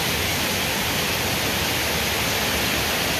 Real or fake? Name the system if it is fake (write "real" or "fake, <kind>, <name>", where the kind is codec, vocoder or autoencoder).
real